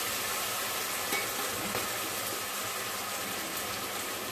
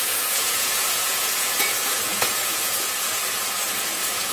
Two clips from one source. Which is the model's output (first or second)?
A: second